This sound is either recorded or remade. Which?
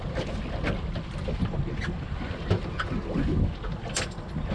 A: recorded